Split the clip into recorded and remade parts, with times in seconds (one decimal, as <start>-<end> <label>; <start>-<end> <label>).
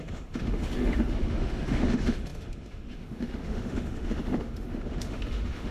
0.0-5.7 remade